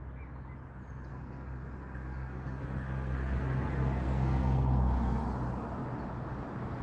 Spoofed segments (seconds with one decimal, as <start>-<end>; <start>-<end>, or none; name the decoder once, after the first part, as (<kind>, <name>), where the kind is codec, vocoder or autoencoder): 1.1-5.2 (codec, SNAC)